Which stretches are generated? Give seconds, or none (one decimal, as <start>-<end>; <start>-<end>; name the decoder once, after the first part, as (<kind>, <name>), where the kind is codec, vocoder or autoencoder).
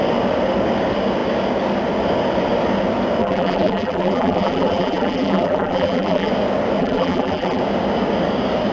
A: 3.2-6.3 (vocoder, BigVGAN v2); 6.8-7.6